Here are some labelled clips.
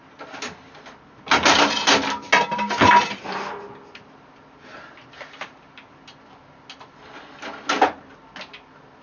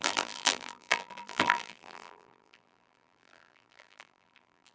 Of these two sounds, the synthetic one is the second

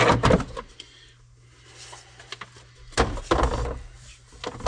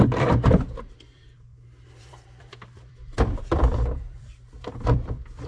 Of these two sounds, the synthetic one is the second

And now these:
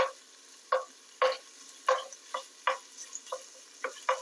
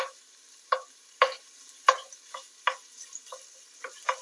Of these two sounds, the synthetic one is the second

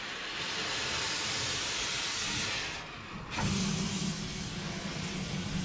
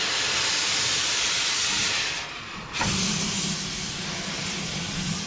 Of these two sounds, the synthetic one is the second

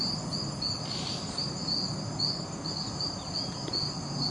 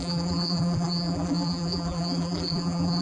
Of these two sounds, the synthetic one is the second